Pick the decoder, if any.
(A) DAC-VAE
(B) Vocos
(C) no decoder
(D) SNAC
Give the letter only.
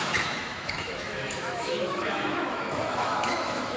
A